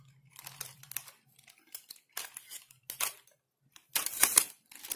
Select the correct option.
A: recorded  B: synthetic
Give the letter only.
A